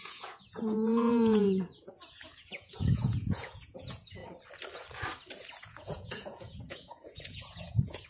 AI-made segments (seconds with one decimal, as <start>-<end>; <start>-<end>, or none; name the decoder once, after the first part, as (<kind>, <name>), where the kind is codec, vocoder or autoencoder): 0.0-4.2 (vocoder, Vocos); 5.6-8.1